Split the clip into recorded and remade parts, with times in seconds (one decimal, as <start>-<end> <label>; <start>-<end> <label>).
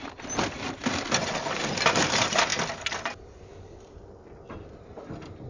0.0-5.5 recorded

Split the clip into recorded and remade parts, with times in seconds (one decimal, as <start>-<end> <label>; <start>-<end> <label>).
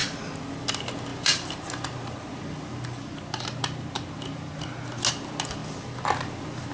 0.0-6.7 recorded